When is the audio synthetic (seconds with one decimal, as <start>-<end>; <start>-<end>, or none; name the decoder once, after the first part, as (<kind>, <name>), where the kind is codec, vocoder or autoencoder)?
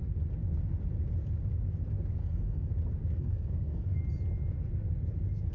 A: 2.2-2.7 (codec, SNAC); 3.1-4.0